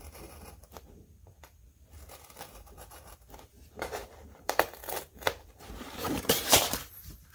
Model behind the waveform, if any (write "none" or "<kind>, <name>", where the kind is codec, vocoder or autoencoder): vocoder, BigVGAN v2